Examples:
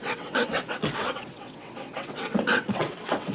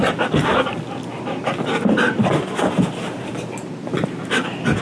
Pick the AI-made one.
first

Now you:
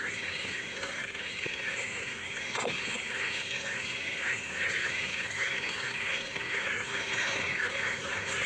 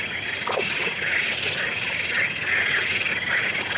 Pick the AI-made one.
first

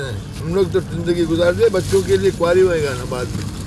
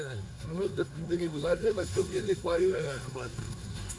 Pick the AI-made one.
second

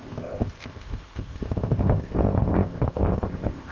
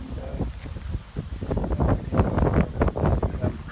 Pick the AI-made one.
first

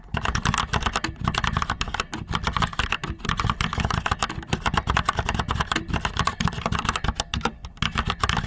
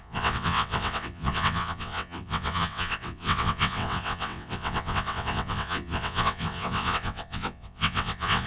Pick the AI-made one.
second